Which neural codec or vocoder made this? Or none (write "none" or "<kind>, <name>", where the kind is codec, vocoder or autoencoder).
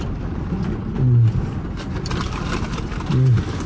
none